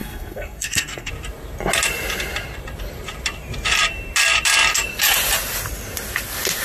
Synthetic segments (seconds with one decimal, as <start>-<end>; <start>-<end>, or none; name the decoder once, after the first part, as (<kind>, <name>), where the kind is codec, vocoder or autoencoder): 0.0-1.1 (codec, SNAC)